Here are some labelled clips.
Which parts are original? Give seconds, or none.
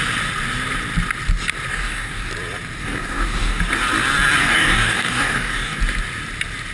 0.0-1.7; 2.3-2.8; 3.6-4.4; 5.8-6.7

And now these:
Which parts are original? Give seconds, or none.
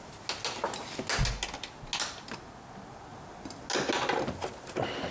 0.0-5.1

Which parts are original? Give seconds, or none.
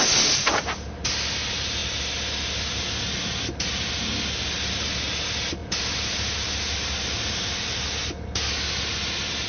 0.0-9.5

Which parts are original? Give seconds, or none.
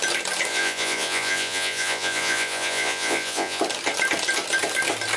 0.0-0.5; 3.6-5.2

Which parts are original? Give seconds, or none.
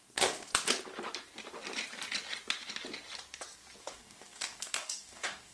0.5-3.8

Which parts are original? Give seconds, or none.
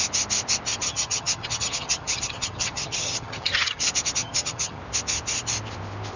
0.0-0.8; 3.8-4.2; 4.8-6.2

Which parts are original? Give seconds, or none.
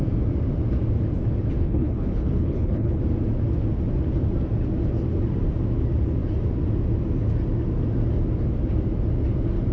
0.0-1.6; 3.0-9.7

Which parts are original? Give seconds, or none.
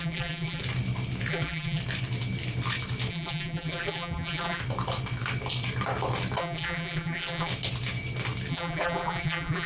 0.6-1.3; 1.8-3.1; 4.6-6.4; 7.5-8.5